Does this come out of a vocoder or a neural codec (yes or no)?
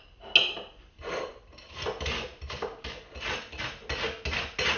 no